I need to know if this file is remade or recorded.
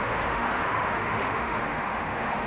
remade